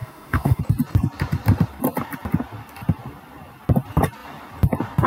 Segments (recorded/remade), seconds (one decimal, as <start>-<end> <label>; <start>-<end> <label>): 0.0-0.6 remade; 0.6-5.1 recorded